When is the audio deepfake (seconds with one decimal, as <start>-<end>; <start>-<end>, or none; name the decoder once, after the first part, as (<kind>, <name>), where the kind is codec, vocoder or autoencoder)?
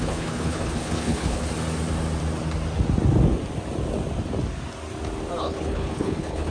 0.0-1.5 (codec, HILCodec); 5.4-6.5